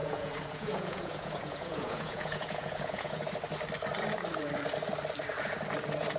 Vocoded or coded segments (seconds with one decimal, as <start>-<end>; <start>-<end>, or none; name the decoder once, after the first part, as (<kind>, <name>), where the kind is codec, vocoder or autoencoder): 0.0-3.2 (vocoder, Vocos)